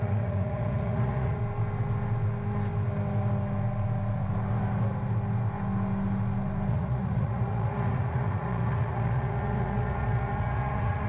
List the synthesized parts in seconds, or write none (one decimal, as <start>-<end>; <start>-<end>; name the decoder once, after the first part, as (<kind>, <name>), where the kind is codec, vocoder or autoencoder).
0.0-1.4 (vocoder, Vocos); 6.7-11.1